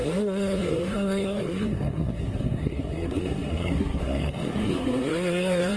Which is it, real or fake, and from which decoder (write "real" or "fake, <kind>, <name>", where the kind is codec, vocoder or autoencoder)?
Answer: fake, codec, SNAC